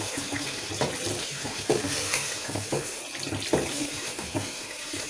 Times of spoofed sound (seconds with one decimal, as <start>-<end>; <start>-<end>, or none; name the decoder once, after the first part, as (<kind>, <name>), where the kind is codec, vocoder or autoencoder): 0.0-0.7 (autoencoder, DAC-VAE); 1.2-3.0; 3.7-5.1